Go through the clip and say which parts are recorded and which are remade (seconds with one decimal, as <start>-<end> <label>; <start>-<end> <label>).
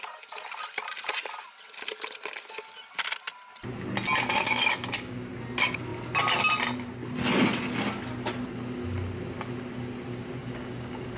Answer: 0.0-4.4 recorded; 4.4-5.3 remade; 5.3-10.4 recorded; 10.4-11.2 remade